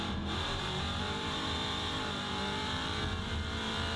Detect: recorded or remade remade